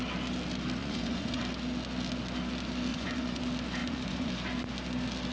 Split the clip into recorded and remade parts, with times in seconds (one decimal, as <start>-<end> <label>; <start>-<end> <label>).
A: 0.0-0.8 recorded; 0.8-1.4 remade; 1.4-2.9 recorded; 2.9-3.4 remade; 3.4-3.8 recorded; 3.8-4.3 remade; 4.3-5.3 recorded